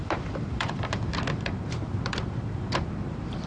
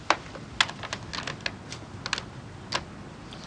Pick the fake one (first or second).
first